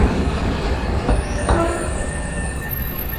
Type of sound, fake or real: fake